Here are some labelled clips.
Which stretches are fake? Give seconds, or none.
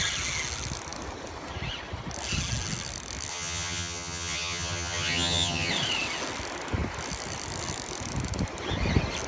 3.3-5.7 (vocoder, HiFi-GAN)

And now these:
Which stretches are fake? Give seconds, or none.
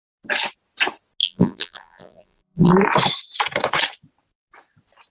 1.2-2.7 (vocoder, BigVGAN v2)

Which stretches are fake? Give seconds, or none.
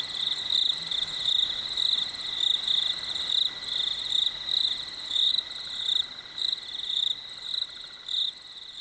none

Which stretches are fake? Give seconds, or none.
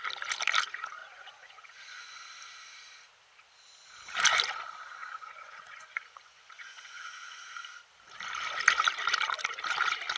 1.0-2.2 (vocoder, Vocos); 5.0-7.4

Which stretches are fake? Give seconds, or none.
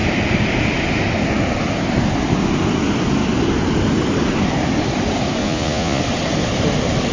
5.4-6.0 (vocoder, Vocos)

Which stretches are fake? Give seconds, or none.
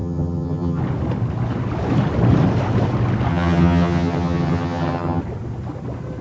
0.0-0.8 (vocoder, HiFi-GAN); 3.3-5.2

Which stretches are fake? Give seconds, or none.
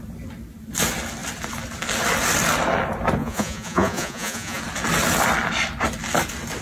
3.2-4.6 (vocoder, Vocos)